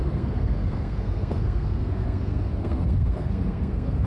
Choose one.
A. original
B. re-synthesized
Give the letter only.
B